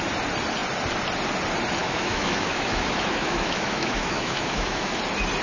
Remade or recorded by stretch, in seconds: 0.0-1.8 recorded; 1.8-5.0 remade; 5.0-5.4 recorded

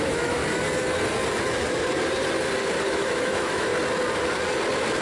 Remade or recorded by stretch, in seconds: 0.0-0.4 remade; 0.4-2.9 recorded; 2.9-3.7 remade; 3.7-5.0 recorded